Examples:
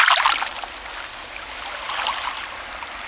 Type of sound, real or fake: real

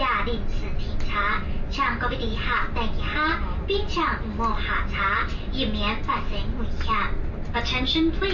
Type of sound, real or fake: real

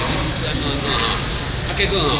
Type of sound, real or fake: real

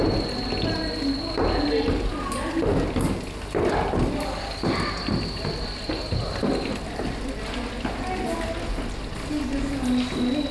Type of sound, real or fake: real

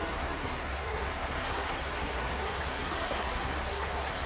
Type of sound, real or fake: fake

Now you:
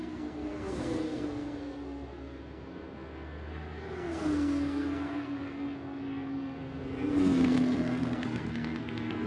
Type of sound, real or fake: fake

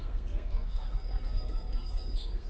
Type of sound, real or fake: fake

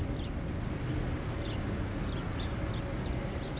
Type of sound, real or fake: real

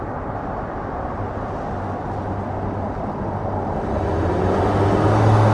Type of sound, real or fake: real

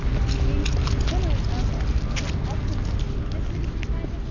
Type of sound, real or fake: real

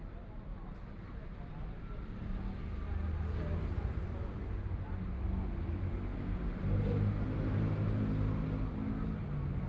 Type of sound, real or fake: real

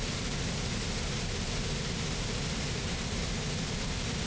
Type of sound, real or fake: real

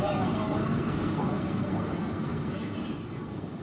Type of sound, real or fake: fake